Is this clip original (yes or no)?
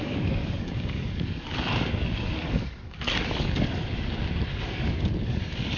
no